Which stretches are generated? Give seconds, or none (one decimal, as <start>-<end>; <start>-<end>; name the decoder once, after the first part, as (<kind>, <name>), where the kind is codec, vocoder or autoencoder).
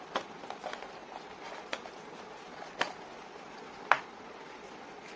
none